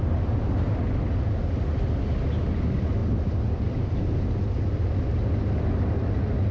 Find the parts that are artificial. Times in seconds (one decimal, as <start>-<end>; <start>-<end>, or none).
none